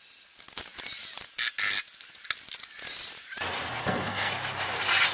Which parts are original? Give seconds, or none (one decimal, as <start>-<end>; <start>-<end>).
0.0-3.8; 4.3-5.1